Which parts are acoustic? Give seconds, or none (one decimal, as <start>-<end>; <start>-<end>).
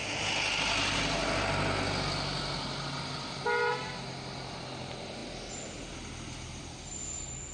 0.0-7.5